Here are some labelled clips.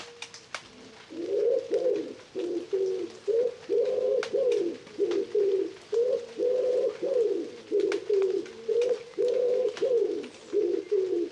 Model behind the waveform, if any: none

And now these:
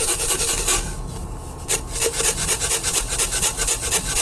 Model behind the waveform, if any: none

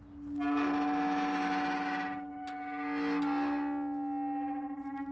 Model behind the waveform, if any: none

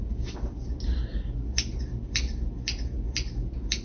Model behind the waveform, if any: none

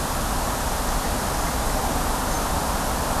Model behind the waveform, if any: none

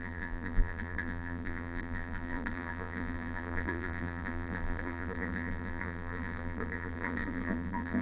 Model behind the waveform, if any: vocoder, BigVGAN v2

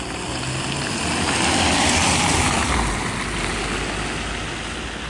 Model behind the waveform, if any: none